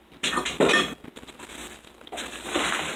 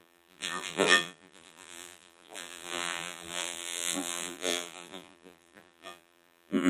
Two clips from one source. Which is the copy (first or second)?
second